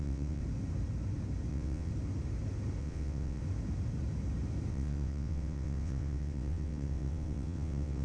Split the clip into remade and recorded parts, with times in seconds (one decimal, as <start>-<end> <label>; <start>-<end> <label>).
0.0-0.4 remade; 0.4-1.5 recorded; 1.5-1.9 remade; 1.9-2.8 recorded; 2.8-3.4 remade; 3.4-4.7 recorded; 4.7-8.0 remade